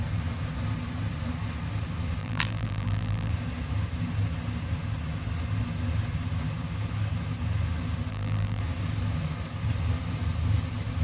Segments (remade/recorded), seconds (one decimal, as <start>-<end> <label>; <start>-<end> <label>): 0.0-2.2 recorded; 2.2-3.3 remade; 3.3-8.1 recorded; 8.1-8.6 remade; 8.6-11.0 recorded